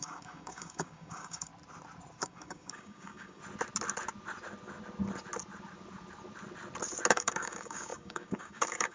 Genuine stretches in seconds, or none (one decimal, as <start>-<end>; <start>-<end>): 1.5-2.2; 3.4-7.1